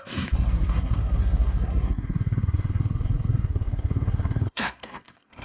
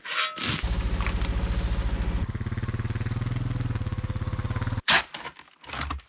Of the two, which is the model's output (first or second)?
first